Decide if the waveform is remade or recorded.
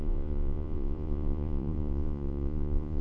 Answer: remade